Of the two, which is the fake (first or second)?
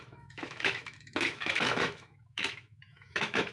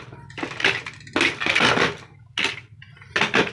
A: first